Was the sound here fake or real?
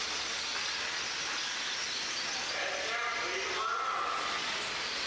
real